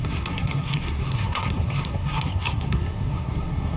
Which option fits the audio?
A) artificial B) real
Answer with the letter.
A